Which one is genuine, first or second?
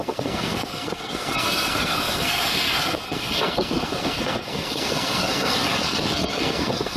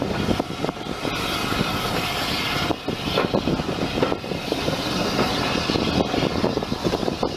second